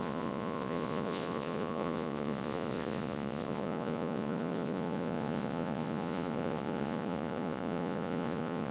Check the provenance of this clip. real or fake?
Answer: fake